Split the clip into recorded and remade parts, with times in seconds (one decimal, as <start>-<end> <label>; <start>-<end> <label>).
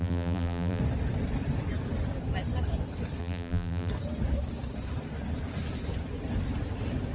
0.0-0.8 remade; 0.8-3.2 recorded; 3.2-3.9 remade; 3.9-7.1 recorded